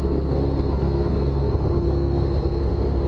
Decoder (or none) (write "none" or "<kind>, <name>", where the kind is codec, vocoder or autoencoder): codec, SNAC